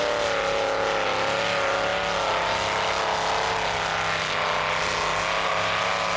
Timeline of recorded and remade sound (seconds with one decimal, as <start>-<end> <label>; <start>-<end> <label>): 0.0-6.2 recorded